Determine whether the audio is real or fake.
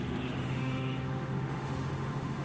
fake